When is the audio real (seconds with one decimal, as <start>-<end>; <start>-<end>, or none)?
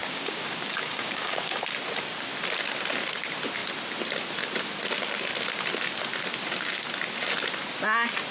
1.6-8.3